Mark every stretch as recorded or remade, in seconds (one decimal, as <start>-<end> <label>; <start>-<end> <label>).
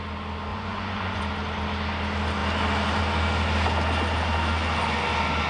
0.0-0.5 recorded; 0.5-1.2 remade; 1.2-5.5 recorded